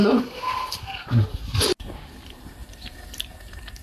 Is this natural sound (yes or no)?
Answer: yes